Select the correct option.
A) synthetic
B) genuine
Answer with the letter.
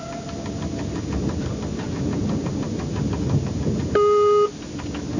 B